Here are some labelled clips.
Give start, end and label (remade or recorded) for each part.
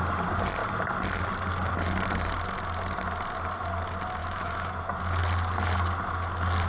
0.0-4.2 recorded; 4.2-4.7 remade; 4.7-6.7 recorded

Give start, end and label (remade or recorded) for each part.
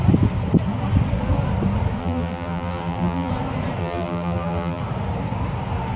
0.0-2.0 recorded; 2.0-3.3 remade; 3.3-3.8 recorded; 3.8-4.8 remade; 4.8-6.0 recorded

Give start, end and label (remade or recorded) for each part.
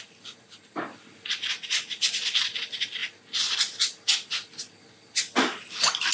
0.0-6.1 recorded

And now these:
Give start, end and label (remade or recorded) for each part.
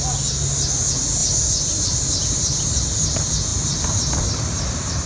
0.0-1.2 recorded; 1.2-2.8 remade; 2.8-5.1 recorded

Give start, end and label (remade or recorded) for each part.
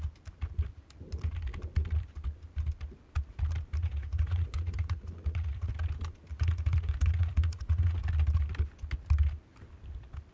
0.0-3.8 recorded; 3.8-5.7 remade; 5.7-6.3 recorded; 6.3-8.0 remade; 8.0-10.3 recorded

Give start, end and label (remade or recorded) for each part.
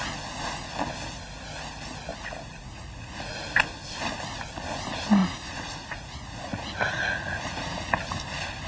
0.0-2.1 recorded; 2.1-3.4 remade; 3.4-5.2 recorded; 5.2-8.0 remade; 8.0-8.7 recorded